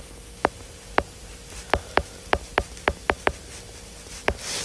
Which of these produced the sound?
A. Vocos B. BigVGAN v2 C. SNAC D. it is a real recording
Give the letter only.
D